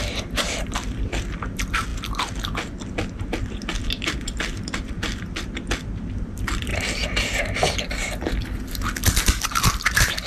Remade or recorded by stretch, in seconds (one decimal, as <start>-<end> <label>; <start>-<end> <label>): 0.0-6.7 remade; 6.7-9.4 recorded; 9.4-10.3 remade